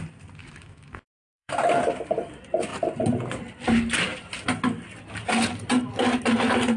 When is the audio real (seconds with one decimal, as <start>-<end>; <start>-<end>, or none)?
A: 0.0-0.4; 1.8-6.8